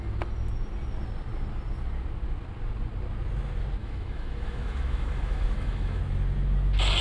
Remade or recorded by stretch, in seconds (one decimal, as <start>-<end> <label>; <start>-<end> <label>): 0.0-3.8 recorded; 3.8-6.0 remade; 6.0-7.0 recorded